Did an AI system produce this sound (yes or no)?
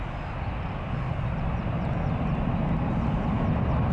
no